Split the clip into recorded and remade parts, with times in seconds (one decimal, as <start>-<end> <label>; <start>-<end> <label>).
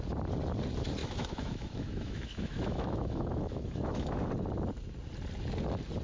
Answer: 0.0-1.0 recorded; 1.0-4.3 remade; 4.3-6.0 recorded